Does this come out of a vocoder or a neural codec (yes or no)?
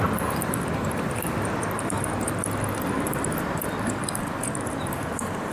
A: no